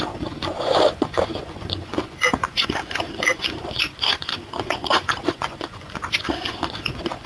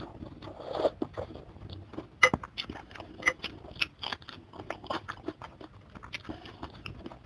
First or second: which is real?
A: second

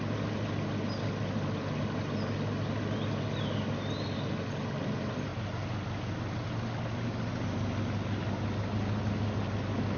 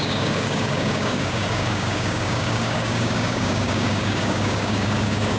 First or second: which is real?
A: first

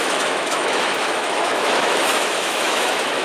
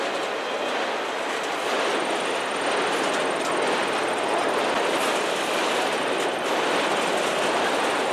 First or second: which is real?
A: second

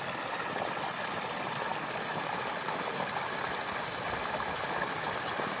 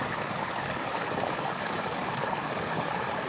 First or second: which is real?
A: first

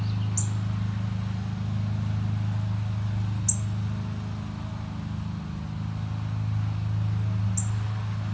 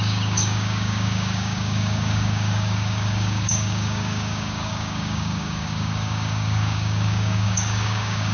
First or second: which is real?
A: first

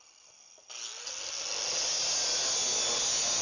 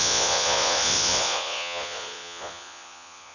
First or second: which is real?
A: first